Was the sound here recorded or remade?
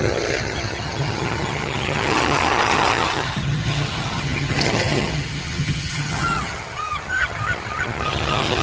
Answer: remade